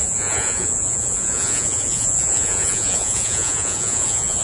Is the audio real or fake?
fake